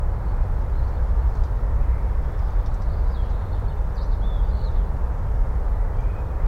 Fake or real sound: real